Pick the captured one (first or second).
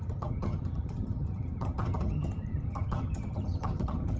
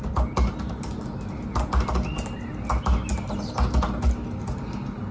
second